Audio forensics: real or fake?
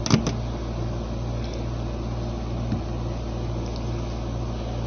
real